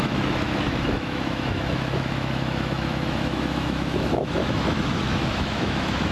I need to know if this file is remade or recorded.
remade